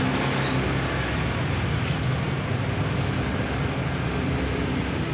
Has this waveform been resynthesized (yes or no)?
no